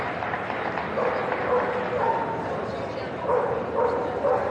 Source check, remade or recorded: recorded